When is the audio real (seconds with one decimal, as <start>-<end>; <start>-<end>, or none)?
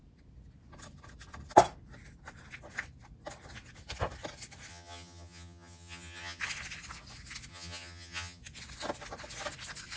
0.0-4.7; 6.4-7.5; 8.4-10.0